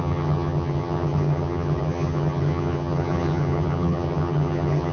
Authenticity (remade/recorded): remade